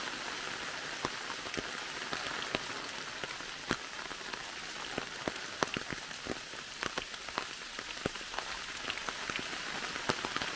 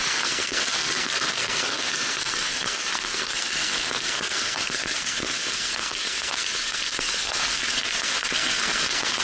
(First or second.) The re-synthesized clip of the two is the second